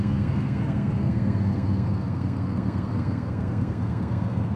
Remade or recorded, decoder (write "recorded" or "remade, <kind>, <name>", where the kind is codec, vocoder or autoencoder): remade, codec, SNAC